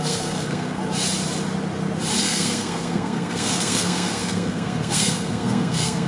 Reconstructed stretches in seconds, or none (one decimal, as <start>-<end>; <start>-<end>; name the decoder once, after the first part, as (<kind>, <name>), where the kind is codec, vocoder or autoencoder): 0.0-0.8 (codec, SNAC); 2.2-6.1

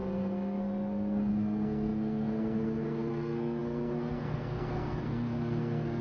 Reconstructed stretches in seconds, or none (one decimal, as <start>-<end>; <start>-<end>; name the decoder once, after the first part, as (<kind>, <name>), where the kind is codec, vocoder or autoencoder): 0.0-6.0 (codec, SNAC)

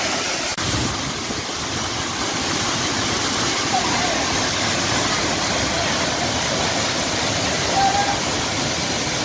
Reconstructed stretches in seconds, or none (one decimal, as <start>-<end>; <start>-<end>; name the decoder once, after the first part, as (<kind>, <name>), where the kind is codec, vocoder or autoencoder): none

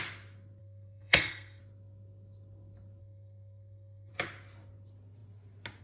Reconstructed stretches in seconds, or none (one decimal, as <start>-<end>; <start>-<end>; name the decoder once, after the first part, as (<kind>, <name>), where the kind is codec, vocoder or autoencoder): 0.6-1.6 (codec, SNAC); 3.0-4.1

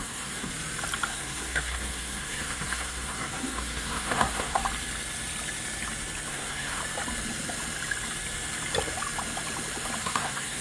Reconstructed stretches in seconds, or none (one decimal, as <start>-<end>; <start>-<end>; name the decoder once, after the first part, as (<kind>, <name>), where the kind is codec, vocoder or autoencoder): 0.0-0.5 (codec, SNAC); 1.1-4.6; 6.3-6.8; 10.0-10.6

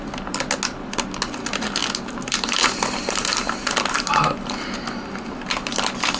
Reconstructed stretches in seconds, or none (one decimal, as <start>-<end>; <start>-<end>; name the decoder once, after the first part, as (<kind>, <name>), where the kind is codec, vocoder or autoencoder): none

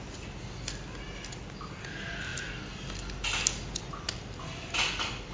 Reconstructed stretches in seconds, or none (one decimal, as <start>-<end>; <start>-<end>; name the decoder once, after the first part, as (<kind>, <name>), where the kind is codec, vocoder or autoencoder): none